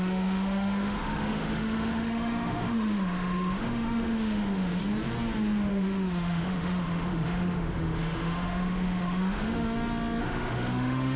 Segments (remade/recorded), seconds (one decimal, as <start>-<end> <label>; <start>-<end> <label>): 0.0-4.8 remade; 4.8-5.7 recorded; 5.7-9.6 remade; 9.6-10.2 recorded; 10.2-11.2 remade